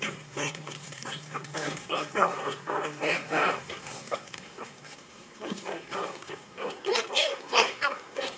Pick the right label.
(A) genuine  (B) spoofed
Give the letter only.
B